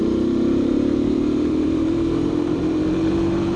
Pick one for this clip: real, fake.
fake